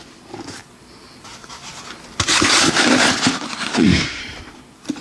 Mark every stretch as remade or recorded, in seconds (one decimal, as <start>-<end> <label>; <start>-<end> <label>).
0.0-3.5 recorded; 3.5-4.2 remade; 4.2-5.0 recorded